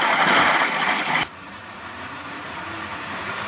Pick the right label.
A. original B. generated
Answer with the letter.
B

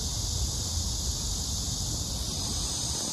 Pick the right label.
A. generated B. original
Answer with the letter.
B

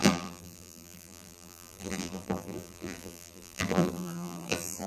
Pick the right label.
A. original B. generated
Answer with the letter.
B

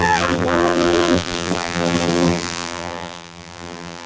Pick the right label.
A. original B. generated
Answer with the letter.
B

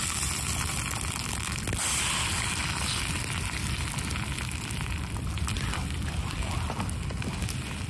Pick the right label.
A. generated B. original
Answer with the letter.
B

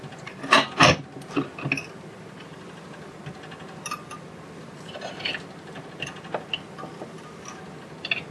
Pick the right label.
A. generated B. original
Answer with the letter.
B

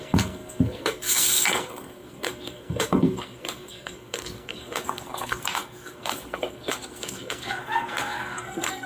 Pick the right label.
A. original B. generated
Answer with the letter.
B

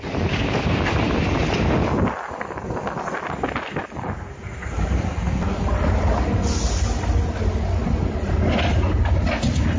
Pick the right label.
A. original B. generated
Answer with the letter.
A